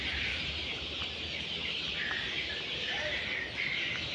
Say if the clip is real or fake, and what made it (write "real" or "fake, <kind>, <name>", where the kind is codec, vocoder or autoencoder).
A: real